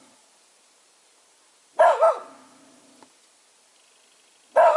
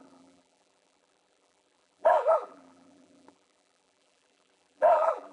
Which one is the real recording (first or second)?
first